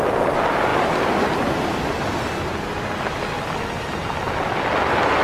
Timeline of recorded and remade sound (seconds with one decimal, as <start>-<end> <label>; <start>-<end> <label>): 0.0-5.2 recorded

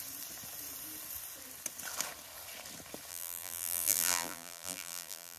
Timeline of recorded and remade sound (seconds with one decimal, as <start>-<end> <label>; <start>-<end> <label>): 0.0-3.1 recorded; 3.1-5.4 remade

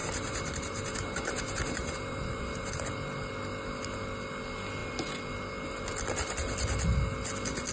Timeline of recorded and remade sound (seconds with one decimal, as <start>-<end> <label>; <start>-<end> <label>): 0.0-2.9 remade; 2.9-7.7 recorded

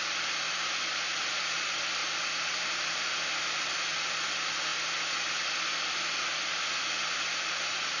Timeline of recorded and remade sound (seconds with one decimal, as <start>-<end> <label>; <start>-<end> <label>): 0.0-2.0 recorded; 2.0-3.7 remade; 3.7-8.0 recorded

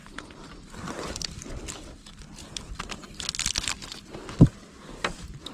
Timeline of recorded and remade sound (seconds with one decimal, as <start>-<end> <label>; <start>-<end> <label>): 0.0-0.6 recorded; 0.6-2.0 remade; 2.0-3.5 recorded; 3.5-5.5 remade

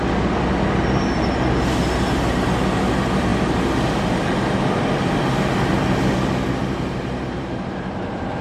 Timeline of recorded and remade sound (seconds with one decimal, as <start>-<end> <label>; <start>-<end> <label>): 0.0-6.6 recorded; 6.6-8.4 remade